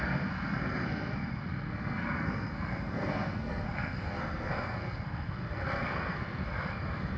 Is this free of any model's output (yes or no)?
no